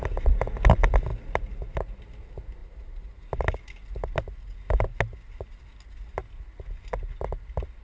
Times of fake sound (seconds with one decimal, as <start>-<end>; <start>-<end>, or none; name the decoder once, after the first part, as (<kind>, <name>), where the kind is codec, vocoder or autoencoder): 2.6-3.2 (vocoder, BigVGAN v2)